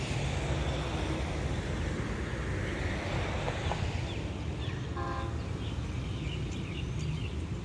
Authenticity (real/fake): real